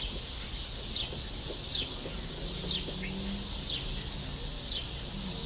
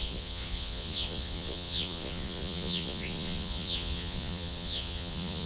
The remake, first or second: second